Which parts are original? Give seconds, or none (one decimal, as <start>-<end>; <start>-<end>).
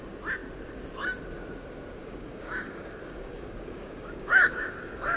0.0-2.0